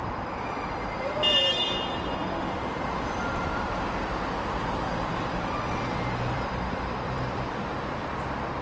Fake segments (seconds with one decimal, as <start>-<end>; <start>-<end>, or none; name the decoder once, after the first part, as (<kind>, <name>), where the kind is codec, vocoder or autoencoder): 0.0-2.2 (vocoder, BigVGAN v2); 2.7-8.6

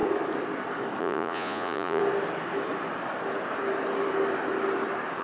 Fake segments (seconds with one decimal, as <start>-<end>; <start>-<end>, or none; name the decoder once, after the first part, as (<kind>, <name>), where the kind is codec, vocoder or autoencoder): 1.0-2.0 (vocoder, Vocos)

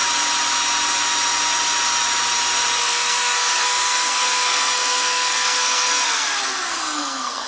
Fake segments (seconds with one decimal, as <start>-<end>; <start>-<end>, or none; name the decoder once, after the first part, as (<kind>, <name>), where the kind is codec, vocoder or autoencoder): 2.8-7.5 (codec, SNAC)

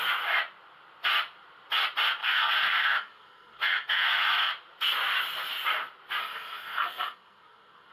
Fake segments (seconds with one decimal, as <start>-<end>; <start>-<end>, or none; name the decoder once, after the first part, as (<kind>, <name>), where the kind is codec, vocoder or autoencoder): 2.2-4.5 (codec, SNAC); 6.2-7.9

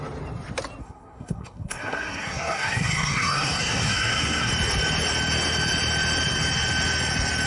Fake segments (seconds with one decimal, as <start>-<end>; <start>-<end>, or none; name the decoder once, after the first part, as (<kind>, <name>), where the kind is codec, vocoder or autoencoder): 0.8-4.5 (codec, SNAC)

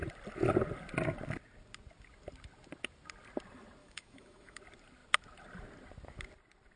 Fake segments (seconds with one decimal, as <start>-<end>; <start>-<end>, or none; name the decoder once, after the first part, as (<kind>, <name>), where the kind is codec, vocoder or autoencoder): 3.8-4.6 (autoencoder, DAC-VAE)

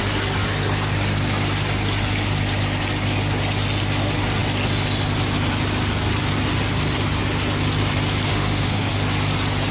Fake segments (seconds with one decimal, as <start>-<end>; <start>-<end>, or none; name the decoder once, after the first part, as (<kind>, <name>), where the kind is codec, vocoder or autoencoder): 8.3-8.9 (autoencoder, DAC-VAE)

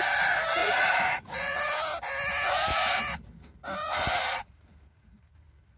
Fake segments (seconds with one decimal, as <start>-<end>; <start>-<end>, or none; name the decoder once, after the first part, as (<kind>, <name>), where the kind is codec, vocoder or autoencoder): 0.6-1.6 (vocoder, Vocos); 3.8-5.2